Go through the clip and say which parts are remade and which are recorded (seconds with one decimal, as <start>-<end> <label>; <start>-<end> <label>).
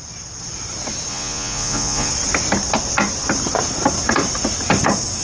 0.0-1.1 recorded; 1.1-2.1 remade; 2.1-5.2 recorded